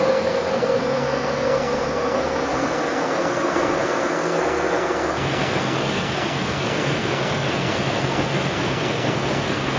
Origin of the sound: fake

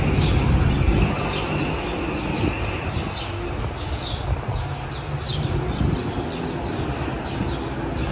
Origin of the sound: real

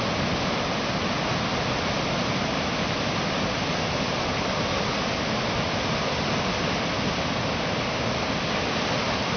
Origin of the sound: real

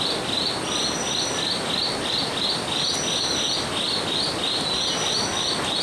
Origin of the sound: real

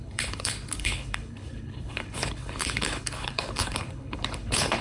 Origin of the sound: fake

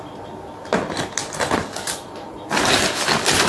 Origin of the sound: real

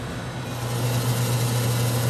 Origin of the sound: real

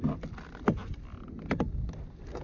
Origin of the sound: real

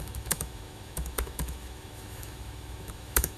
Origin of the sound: fake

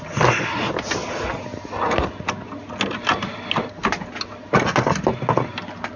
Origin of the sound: real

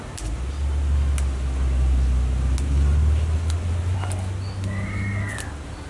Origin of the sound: real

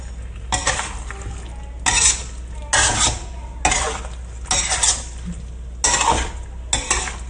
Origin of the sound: real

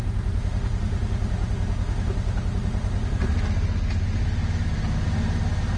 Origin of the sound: real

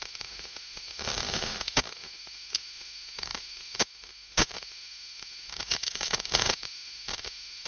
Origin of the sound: fake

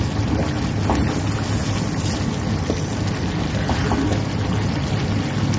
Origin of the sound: real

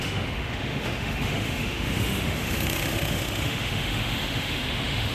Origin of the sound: fake